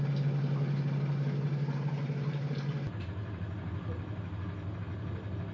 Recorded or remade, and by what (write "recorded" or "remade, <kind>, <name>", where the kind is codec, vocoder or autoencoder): recorded